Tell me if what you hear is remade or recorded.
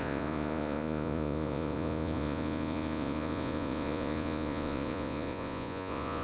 remade